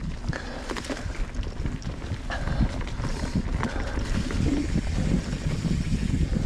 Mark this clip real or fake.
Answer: real